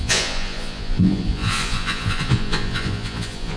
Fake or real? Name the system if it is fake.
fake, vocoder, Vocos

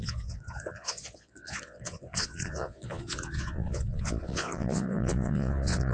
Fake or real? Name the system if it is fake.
fake, vocoder, Vocos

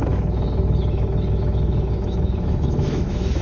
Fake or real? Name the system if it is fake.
fake, autoencoder, DAC-VAE